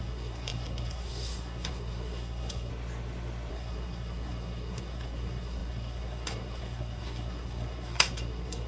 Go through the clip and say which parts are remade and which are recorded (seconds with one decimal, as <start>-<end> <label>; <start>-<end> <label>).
0.0-2.7 remade; 2.7-3.5 recorded; 3.5-8.7 remade